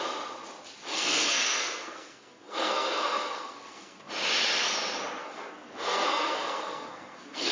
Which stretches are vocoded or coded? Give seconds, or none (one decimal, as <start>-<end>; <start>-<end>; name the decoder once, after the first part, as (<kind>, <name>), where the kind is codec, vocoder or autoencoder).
0.9-4.1 (codec, SNAC); 5.2-7.5